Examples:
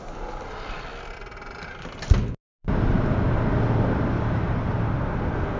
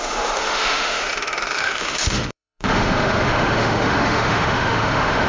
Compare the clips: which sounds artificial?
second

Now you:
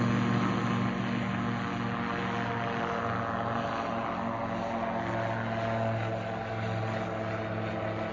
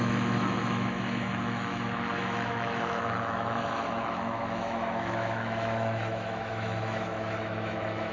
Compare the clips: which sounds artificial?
second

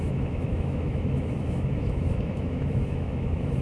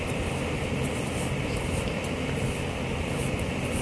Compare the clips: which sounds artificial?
first